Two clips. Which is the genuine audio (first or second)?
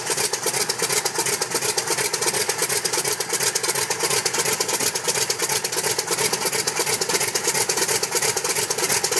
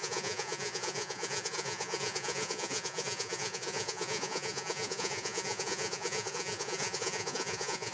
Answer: first